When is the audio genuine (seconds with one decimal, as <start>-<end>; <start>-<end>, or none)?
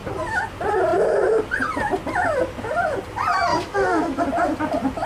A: 0.0-3.5; 4.2-5.1